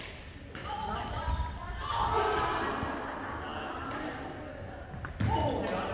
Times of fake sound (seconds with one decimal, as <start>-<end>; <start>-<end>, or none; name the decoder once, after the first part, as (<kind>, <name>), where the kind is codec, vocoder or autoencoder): none